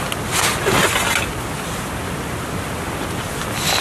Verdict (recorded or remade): recorded